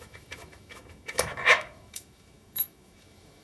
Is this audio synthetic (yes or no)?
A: yes